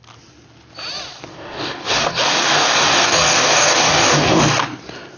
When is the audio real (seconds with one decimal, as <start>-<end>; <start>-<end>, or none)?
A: 0.0-1.3; 4.4-5.2